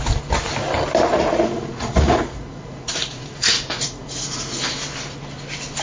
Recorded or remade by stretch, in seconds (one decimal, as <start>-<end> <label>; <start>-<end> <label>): 0.0-1.1 recorded; 1.1-4.6 remade; 4.6-5.8 recorded